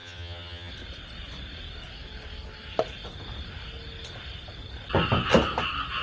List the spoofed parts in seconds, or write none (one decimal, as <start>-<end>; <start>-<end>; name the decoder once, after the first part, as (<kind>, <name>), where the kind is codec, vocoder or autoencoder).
0.0-0.7 (vocoder, HiFi-GAN)